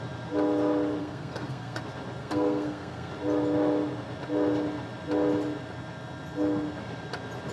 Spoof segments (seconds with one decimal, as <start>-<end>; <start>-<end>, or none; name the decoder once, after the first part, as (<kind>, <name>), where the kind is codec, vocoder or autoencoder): 1.0-1.8 (codec, SNAC); 2.2-3.1